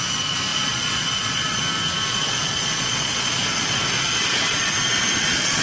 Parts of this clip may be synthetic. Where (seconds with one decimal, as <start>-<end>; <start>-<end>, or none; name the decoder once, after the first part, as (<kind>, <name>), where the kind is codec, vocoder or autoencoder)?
0.5-1.6 (vocoder, Vocos); 2.1-5.6